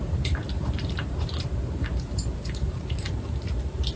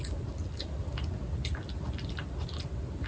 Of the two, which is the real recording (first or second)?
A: second